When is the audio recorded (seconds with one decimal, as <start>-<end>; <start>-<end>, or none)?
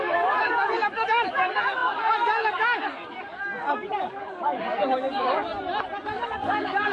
5.5-6.1